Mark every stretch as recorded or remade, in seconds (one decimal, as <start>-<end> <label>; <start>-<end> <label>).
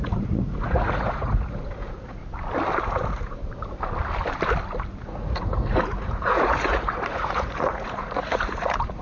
0.0-2.2 remade; 2.2-2.8 recorded; 2.8-3.4 remade; 3.4-5.0 recorded; 5.0-9.0 remade